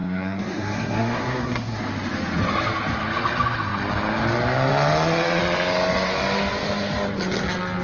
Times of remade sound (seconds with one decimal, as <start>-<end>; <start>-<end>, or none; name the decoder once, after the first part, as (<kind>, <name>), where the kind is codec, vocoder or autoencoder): 0.0-1.8 (codec, SNAC)